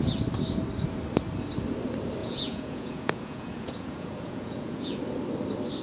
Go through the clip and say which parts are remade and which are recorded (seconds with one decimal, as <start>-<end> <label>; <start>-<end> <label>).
0.0-2.2 recorded; 2.2-5.0 remade; 5.0-5.8 recorded